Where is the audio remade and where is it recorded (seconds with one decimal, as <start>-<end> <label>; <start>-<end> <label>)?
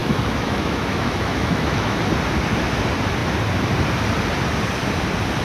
0.0-2.0 remade; 2.0-5.4 recorded